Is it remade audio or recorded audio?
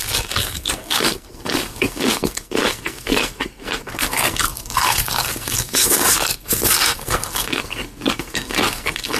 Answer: remade